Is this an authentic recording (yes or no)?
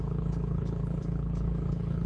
no